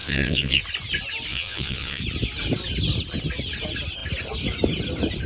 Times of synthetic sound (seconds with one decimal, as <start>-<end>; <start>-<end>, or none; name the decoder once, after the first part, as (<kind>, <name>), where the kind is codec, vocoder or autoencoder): 0.0-0.6 (vocoder, WaveNeXt); 1.3-2.0